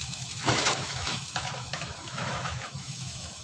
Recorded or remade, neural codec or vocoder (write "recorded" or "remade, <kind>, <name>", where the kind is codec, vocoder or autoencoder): remade, autoencoder, DAC-VAE